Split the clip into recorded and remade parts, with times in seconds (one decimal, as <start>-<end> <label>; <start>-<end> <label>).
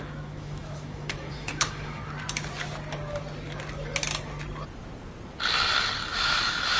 0.0-2.0 remade; 2.0-6.1 recorded; 6.1-6.8 remade